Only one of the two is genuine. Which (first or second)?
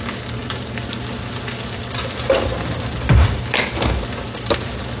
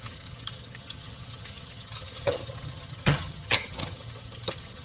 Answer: first